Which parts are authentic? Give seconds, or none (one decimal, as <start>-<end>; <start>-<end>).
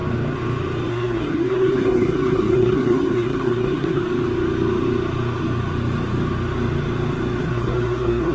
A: 0.0-0.9; 4.0-7.4